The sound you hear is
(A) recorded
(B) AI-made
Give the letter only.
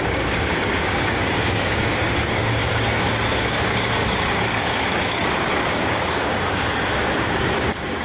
B